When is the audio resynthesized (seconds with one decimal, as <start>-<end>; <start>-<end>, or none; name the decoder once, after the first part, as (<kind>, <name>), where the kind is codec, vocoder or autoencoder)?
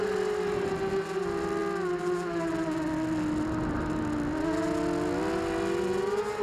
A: none